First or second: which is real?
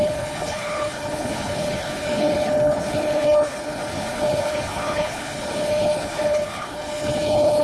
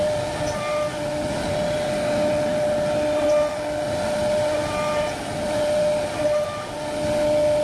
second